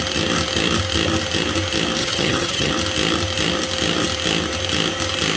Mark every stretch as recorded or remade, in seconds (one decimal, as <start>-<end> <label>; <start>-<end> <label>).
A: 0.0-2.0 recorded; 2.0-2.7 remade; 2.7-5.4 recorded